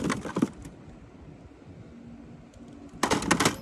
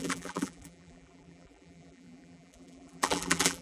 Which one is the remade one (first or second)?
second